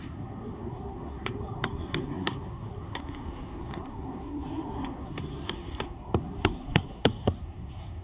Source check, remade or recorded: remade